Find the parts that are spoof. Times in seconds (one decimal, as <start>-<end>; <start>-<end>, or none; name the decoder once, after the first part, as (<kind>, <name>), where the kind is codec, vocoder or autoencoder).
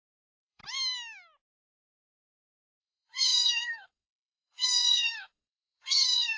0.0-0.6 (codec, SNAC); 2.8-6.4